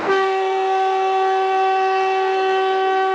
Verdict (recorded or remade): remade